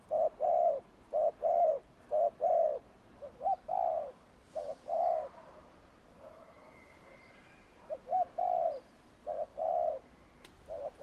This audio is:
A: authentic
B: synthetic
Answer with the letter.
B